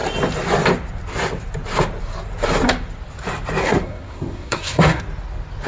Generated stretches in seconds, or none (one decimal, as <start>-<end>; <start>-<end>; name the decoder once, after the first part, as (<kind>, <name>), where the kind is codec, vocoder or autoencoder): 3.6-5.0 (codec, SNAC)